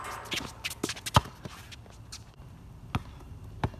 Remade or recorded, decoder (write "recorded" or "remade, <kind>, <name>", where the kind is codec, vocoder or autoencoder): recorded